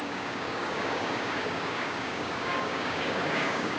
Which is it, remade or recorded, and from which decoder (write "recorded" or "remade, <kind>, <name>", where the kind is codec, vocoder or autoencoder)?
remade, codec, DAC